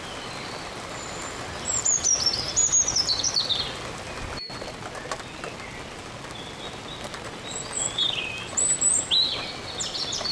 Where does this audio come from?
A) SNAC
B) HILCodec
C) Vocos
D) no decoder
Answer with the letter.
D